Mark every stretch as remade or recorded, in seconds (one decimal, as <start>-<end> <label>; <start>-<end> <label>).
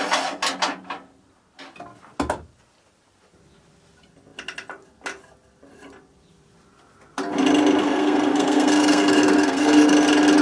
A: 0.0-7.8 recorded; 7.8-9.9 remade; 9.9-10.4 recorded